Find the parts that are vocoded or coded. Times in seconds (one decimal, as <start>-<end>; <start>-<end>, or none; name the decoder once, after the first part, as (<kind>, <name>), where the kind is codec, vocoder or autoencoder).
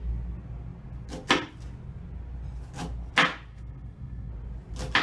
3.5-4.3 (codec, SNAC)